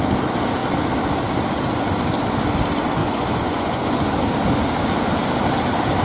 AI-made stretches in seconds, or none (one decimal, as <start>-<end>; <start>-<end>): 3.0-4.2